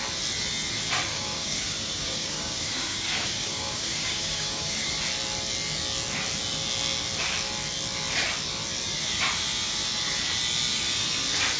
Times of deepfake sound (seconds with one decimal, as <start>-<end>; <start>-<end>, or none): 1.1-4.9